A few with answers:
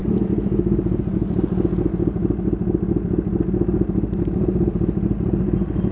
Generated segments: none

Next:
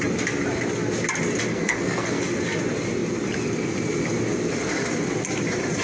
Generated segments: 1.5-2.2 (codec, SNAC)